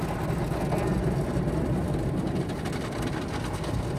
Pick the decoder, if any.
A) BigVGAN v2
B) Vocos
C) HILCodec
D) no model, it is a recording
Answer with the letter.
D